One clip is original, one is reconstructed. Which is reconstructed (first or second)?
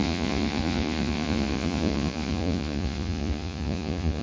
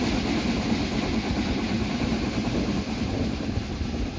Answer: first